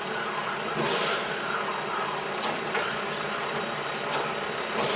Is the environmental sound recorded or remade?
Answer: recorded